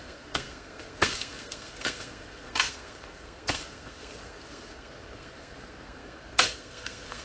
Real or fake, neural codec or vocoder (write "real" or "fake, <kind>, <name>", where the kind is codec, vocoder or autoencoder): fake, codec, SNAC